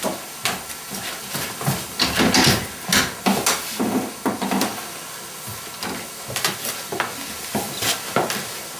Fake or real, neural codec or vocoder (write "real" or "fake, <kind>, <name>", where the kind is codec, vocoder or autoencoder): real